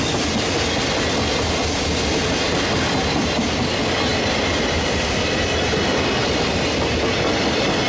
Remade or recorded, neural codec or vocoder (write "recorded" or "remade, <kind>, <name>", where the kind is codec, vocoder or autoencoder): recorded